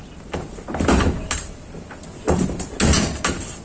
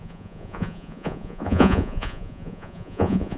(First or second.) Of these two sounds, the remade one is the second